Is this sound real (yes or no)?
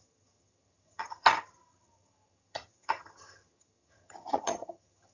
no